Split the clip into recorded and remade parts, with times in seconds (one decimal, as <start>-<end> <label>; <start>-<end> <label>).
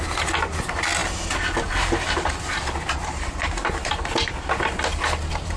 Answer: 0.0-5.6 recorded